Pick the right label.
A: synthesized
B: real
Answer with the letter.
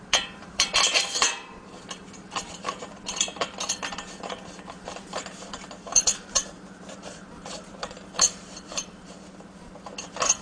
A